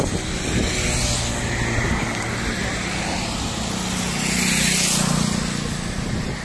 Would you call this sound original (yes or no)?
yes